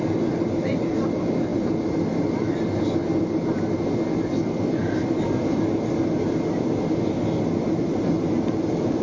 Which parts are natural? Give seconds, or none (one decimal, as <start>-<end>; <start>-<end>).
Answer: 0.0-9.0